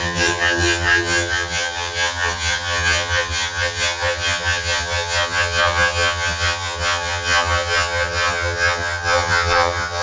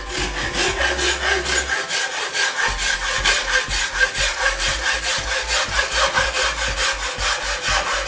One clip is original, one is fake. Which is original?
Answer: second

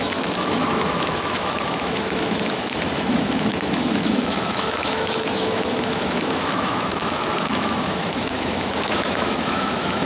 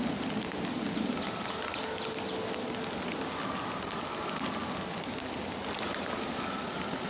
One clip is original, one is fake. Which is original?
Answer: second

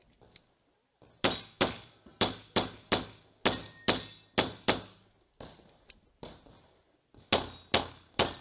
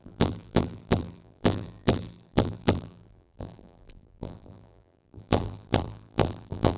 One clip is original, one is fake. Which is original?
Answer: first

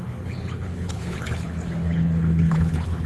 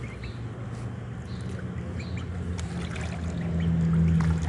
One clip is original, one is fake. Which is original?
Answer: second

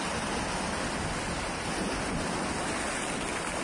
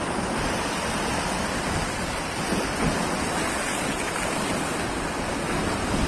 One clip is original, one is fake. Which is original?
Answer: first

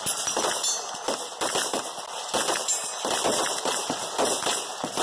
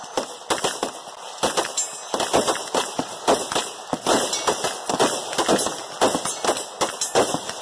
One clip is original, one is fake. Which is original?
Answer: second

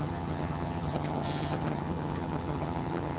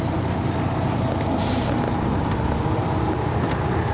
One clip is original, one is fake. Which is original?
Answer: second